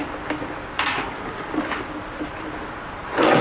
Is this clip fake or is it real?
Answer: fake